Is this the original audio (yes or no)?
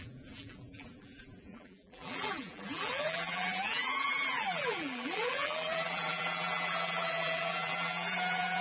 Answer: no